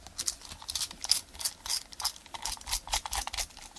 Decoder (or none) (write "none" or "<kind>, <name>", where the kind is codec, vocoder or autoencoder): none